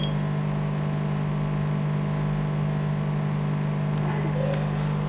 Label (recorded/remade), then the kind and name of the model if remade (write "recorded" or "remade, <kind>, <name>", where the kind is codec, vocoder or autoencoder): recorded